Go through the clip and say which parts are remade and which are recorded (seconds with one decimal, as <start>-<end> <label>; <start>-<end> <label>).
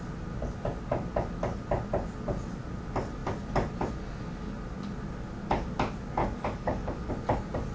0.0-6.2 recorded; 6.2-7.1 remade; 7.1-7.7 recorded